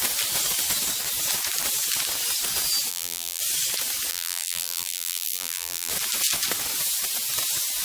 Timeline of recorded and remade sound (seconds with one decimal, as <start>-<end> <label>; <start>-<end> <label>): 0.0-2.9 recorded; 2.9-3.4 remade; 3.4-4.1 recorded; 4.1-5.9 remade; 5.9-7.8 recorded